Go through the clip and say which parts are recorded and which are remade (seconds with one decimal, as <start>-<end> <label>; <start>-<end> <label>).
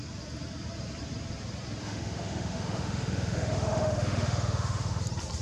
0.0-1.8 recorded; 1.8-5.0 remade; 5.0-5.4 recorded